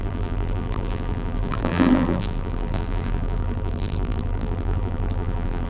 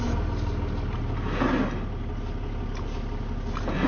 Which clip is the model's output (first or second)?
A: first